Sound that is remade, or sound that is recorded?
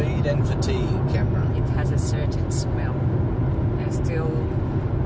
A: recorded